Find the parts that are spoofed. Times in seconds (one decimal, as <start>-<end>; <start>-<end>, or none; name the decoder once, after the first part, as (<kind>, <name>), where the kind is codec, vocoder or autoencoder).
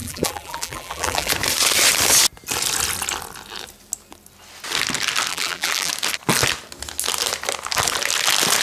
0.0-1.3 (vocoder, BigVGAN v2); 5.3-5.9